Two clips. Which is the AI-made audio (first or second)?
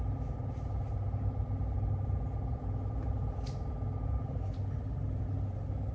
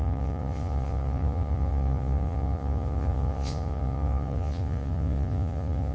second